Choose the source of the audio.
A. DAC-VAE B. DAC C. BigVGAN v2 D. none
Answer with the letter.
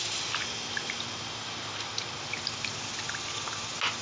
D